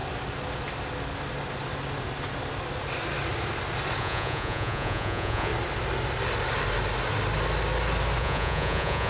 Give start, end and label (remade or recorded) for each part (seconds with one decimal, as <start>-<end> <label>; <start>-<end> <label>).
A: 0.0-4.0 recorded; 4.0-5.5 remade; 5.5-8.2 recorded; 8.2-9.1 remade